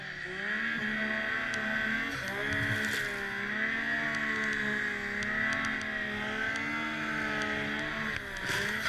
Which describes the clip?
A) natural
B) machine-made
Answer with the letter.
A